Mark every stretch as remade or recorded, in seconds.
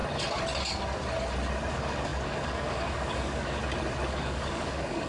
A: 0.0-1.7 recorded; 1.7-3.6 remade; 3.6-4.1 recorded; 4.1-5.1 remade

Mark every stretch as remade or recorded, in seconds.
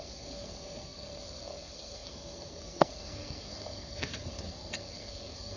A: 0.0-5.6 remade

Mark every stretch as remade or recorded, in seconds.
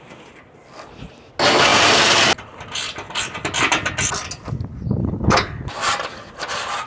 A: 0.0-5.0 recorded; 5.0-5.7 remade; 5.7-6.9 recorded